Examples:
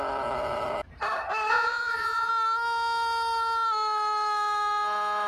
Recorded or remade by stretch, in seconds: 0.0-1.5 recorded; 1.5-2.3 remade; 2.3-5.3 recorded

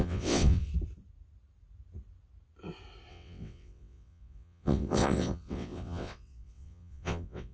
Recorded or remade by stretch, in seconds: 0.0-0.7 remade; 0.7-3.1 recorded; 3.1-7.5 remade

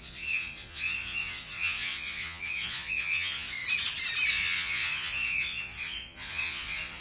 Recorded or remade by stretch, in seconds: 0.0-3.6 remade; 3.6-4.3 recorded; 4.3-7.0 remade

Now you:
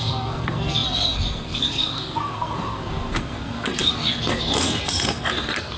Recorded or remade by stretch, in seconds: 0.0-5.8 remade

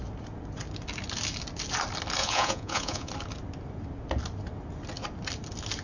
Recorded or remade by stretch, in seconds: 0.0-2.2 recorded; 2.2-3.1 remade; 3.1-5.8 recorded

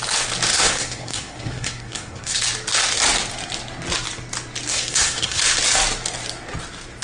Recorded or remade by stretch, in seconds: 0.0-0.5 recorded; 0.5-2.4 remade; 2.4-4.7 recorded; 4.7-5.4 remade; 5.4-7.0 recorded

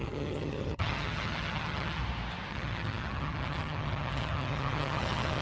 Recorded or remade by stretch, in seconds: 0.0-2.0 remade; 2.0-2.5 recorded; 2.5-5.4 remade

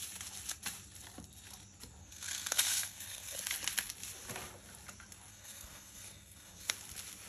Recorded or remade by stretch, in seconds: 0.0-2.0 recorded; 2.0-3.4 remade; 3.4-5.3 recorded; 5.3-6.7 remade; 6.7-7.3 recorded